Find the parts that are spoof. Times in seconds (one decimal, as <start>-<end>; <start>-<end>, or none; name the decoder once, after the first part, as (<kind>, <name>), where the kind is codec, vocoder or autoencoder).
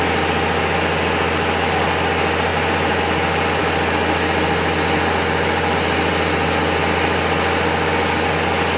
2.5-3.0 (vocoder, BigVGAN v2)